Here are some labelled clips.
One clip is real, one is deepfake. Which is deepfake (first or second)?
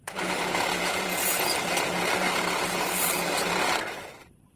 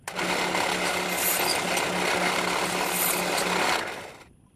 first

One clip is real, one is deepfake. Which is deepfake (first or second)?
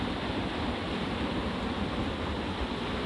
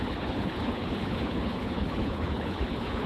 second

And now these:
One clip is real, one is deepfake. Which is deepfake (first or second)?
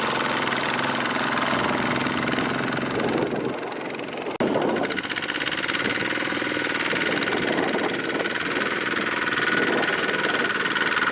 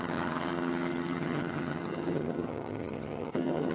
second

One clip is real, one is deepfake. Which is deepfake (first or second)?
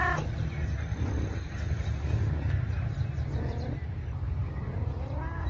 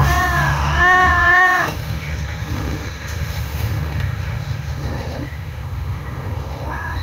second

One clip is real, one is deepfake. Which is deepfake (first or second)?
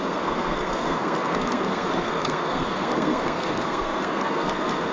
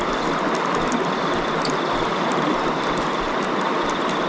first